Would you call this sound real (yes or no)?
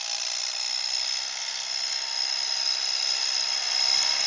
yes